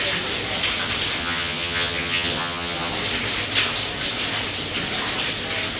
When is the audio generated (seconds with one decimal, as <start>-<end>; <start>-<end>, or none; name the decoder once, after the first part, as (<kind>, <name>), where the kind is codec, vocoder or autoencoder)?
1.2-2.9 (vocoder, HiFi-GAN)